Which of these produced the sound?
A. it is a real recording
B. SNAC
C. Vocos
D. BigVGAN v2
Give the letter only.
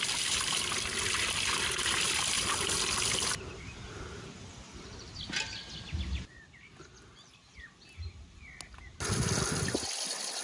A